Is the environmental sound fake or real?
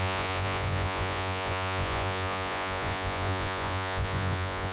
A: fake